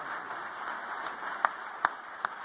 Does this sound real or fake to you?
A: real